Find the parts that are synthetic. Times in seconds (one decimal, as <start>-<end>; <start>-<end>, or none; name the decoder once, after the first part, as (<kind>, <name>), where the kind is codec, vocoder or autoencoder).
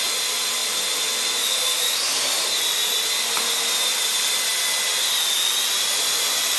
none